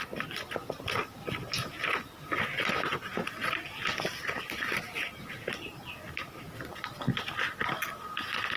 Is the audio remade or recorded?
recorded